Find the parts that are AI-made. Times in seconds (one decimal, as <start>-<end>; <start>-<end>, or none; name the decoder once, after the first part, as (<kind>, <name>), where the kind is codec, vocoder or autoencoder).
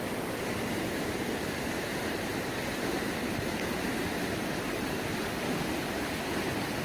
none